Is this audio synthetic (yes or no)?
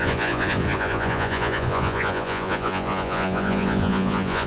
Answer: yes